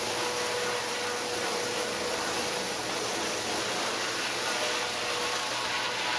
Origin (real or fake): real